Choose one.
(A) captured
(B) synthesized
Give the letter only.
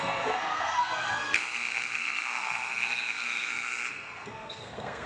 B